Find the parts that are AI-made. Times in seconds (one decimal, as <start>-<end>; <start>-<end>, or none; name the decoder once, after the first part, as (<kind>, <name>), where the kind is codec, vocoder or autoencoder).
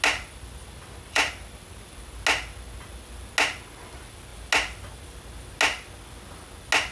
0.8-1.3 (vocoder, BigVGAN v2)